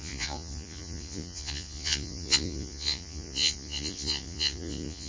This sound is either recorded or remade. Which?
remade